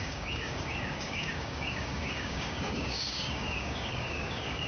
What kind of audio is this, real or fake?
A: fake